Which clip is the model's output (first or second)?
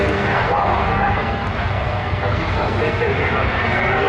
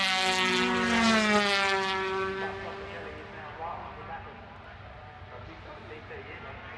first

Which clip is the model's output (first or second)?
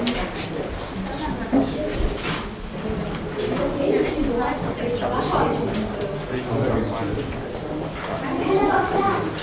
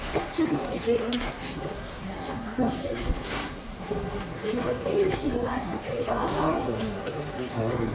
second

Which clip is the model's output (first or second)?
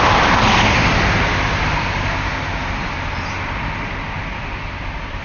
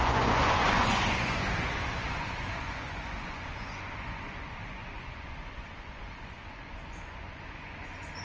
second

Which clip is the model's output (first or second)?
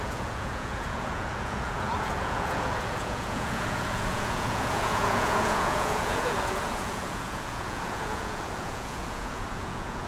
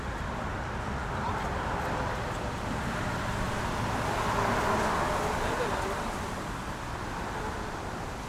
first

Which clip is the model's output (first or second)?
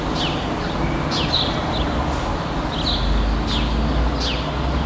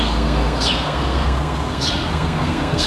second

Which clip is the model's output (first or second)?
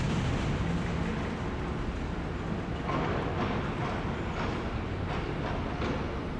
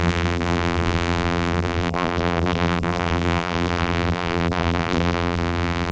second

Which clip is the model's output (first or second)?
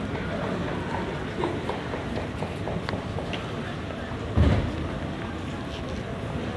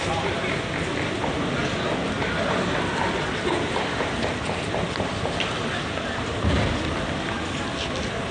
second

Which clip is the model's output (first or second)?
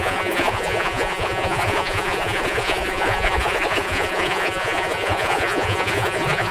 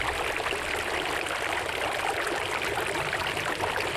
first